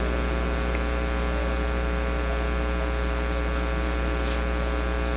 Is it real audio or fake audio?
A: real